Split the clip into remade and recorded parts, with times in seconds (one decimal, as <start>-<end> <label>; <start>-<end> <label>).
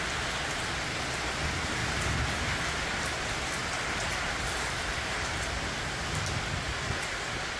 0.0-7.6 recorded